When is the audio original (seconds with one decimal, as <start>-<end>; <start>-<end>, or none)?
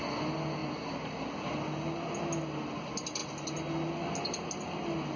0.0-5.2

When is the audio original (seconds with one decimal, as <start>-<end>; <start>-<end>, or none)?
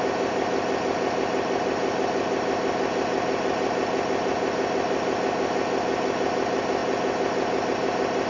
0.0-8.3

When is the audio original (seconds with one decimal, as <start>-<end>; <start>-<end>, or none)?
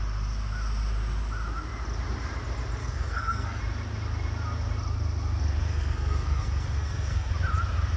0.0-2.8; 3.6-5.7; 7.3-8.0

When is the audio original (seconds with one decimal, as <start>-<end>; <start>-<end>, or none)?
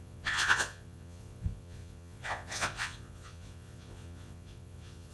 none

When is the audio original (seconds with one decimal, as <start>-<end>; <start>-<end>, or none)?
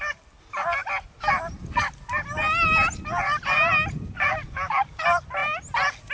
0.0-6.1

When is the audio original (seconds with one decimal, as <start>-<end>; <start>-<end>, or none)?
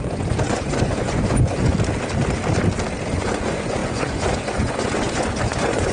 1.7-3.1